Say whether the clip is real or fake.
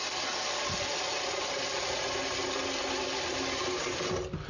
real